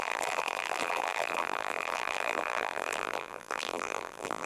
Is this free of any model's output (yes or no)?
no